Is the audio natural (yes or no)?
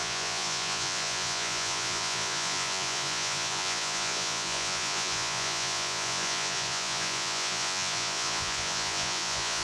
no